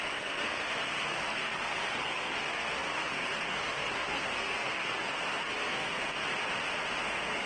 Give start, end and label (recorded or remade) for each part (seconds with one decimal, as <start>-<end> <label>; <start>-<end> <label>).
0.0-6.2 remade; 6.2-7.0 recorded; 7.0-7.5 remade